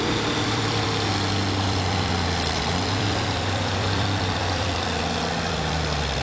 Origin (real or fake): fake